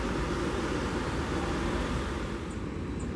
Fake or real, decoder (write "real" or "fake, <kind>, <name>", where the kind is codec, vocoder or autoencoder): real